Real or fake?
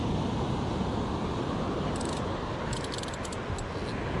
real